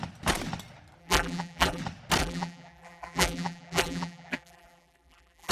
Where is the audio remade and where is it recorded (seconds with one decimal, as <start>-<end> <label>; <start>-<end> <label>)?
0.0-1.0 recorded; 1.0-1.8 remade; 1.8-2.2 recorded; 2.2-5.5 remade